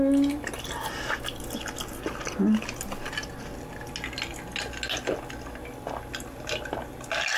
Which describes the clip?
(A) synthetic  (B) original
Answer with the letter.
B